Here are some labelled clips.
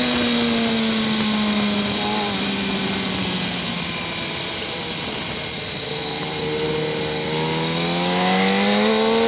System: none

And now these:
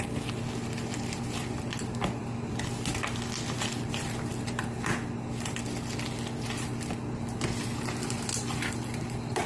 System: none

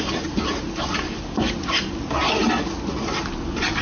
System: none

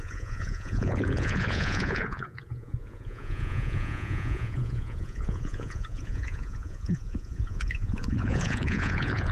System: vocoder, Vocos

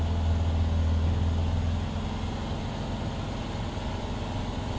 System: none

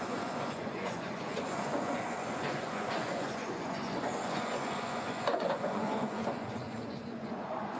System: vocoder, Vocos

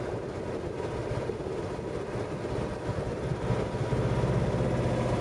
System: none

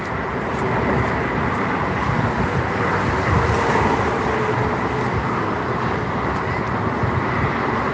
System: none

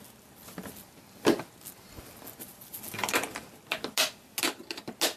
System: none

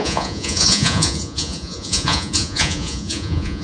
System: vocoder, Vocos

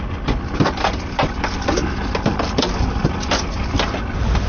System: none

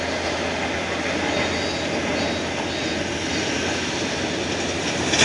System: none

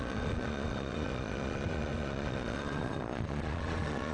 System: vocoder, Vocos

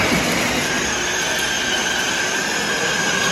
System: none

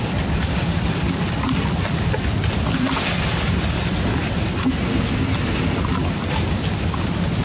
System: none